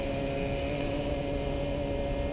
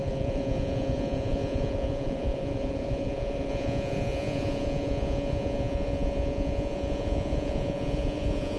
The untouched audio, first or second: first